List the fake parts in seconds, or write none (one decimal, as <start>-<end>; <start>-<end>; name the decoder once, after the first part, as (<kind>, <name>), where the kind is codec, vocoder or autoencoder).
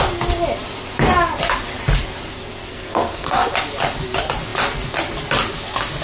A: 2.7-3.5 (codec, SNAC)